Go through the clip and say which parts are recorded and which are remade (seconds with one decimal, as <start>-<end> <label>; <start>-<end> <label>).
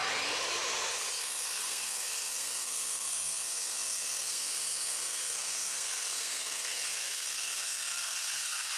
0.0-1.2 recorded; 1.2-8.8 remade